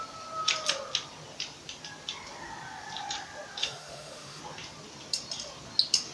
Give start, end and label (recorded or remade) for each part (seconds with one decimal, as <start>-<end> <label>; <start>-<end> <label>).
0.0-3.6 recorded; 3.6-4.4 remade; 4.4-6.1 recorded